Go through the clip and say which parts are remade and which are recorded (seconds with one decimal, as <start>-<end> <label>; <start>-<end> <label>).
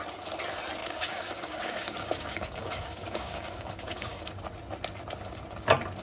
0.0-0.8 recorded; 0.8-4.4 remade; 4.4-6.0 recorded